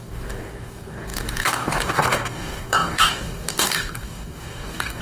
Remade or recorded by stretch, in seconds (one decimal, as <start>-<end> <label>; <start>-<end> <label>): 0.0-5.0 remade